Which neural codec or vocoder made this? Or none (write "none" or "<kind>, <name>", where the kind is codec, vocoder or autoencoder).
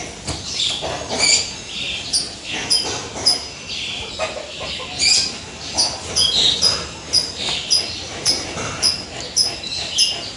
none